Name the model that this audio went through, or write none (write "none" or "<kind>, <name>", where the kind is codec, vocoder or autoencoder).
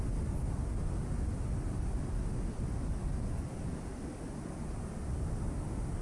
none